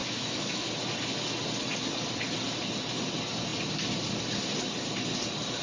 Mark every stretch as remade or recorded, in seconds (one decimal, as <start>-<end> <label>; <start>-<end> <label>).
0.0-0.7 remade; 0.7-5.6 recorded